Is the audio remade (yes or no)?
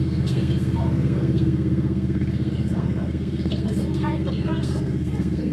yes